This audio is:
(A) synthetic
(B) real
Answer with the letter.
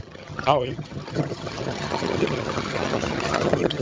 A